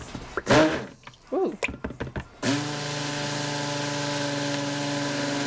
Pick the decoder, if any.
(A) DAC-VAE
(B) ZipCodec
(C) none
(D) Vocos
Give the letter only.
C